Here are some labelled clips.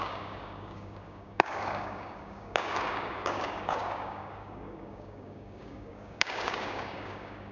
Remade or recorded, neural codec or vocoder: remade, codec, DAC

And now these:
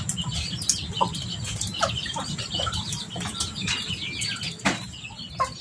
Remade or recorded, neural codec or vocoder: recorded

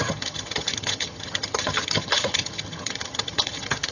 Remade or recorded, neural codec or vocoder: remade, vocoder, HiFi-GAN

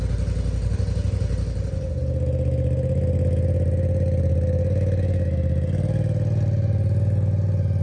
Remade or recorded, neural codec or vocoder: recorded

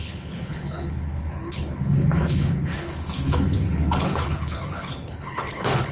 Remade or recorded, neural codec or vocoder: remade, codec, HILCodec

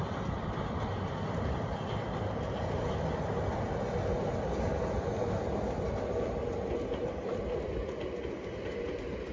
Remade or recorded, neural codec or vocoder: recorded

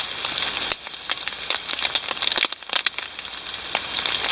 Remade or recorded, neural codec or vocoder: recorded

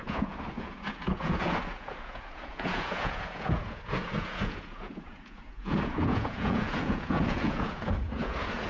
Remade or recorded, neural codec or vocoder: remade, vocoder, Vocos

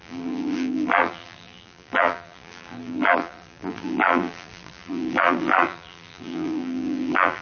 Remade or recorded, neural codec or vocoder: remade, vocoder, BigVGAN v2